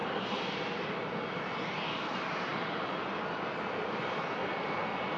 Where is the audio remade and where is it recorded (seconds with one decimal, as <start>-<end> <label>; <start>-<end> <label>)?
0.0-0.6 remade; 0.6-2.5 recorded; 2.5-4.0 remade; 4.0-4.4 recorded; 4.4-5.2 remade